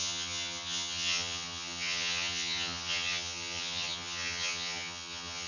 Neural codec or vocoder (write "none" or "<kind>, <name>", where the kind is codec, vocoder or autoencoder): vocoder, HiFi-GAN